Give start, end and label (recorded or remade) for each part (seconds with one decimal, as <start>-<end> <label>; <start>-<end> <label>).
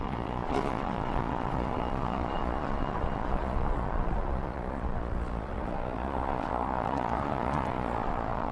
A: 0.0-8.5 remade